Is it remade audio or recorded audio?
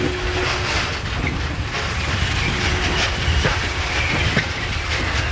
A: recorded